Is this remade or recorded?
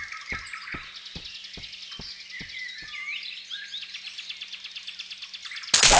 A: recorded